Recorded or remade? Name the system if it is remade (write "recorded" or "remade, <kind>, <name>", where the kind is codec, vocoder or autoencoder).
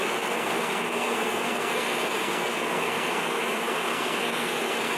remade, codec, SNAC